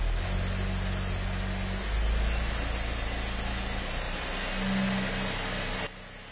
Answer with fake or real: real